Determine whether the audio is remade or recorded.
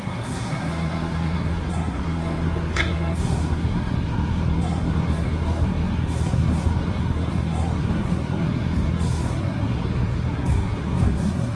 remade